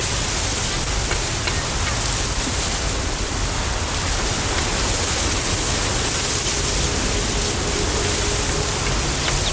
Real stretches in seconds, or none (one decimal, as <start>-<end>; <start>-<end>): 0.0-9.5